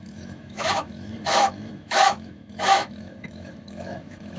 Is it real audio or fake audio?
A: fake